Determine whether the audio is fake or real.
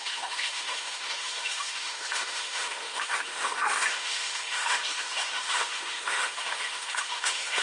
fake